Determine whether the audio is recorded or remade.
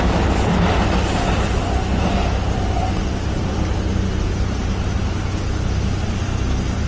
recorded